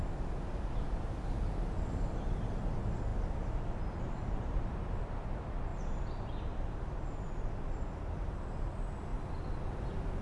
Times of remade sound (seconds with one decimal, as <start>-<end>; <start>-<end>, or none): 5.7-6.8